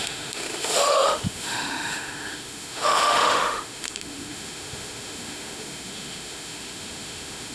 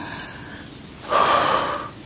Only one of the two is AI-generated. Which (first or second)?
first